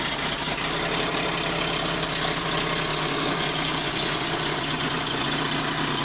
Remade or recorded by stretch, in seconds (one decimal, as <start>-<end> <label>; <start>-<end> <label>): 0.0-2.9 recorded; 2.9-5.3 remade; 5.3-6.0 recorded